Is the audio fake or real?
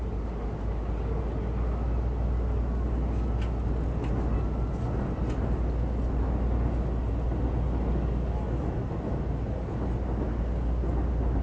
real